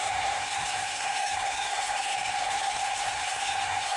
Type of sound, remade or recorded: remade